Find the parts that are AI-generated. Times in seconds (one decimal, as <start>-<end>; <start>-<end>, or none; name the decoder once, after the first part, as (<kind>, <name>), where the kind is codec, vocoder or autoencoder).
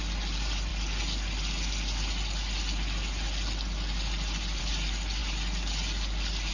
none